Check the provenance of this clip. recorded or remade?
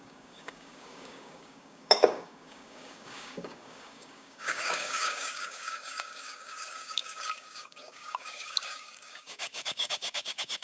remade